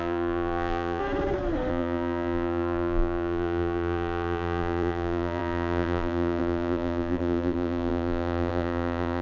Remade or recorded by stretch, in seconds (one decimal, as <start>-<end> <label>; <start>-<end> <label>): 0.0-1.0 remade; 1.0-1.7 recorded; 1.7-9.2 remade